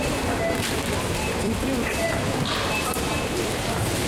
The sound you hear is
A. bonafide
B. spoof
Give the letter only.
B